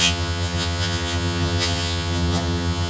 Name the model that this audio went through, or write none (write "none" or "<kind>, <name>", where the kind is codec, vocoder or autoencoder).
vocoder, HiFi-GAN